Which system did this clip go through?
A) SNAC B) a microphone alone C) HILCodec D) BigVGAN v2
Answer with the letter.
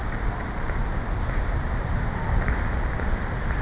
D